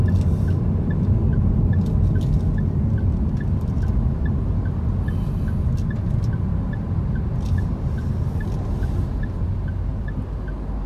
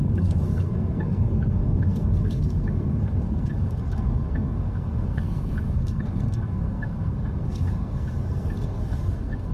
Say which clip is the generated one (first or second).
second